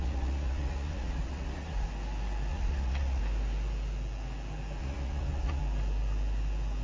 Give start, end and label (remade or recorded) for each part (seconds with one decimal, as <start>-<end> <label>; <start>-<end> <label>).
0.0-1.9 remade; 1.9-2.5 recorded; 2.5-3.2 remade; 3.2-4.8 recorded; 4.8-5.6 remade; 5.6-6.8 recorded